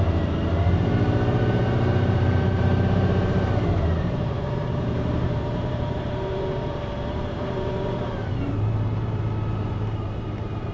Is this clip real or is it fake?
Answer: fake